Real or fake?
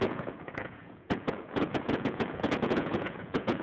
fake